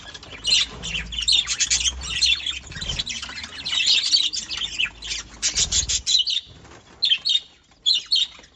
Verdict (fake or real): real